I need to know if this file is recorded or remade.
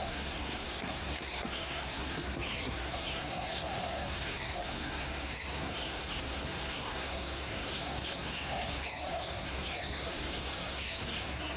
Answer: remade